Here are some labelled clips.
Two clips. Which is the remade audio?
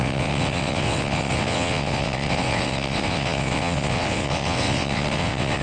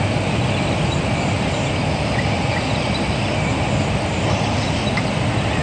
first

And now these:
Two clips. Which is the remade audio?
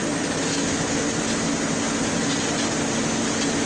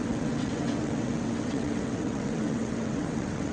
second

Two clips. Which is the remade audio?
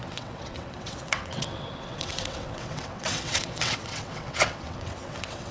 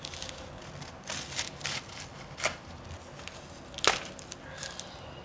first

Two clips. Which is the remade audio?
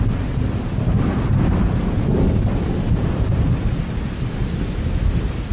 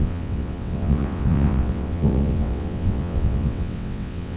second